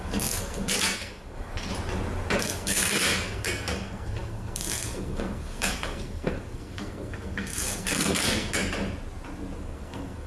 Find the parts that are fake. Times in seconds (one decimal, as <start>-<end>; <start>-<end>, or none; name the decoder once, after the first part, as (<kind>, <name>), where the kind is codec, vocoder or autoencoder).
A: 0.0-1.7 (codec, SNAC); 2.3-8.6; 9.6-10.3